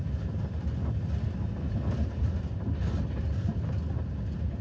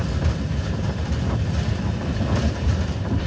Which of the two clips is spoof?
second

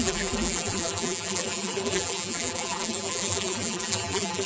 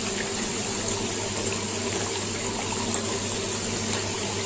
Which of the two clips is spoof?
first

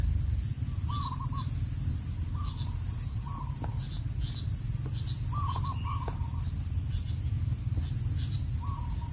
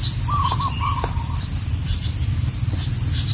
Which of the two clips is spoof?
second